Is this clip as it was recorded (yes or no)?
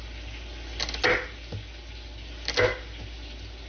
yes